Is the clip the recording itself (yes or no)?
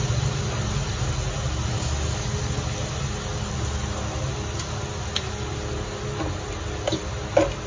yes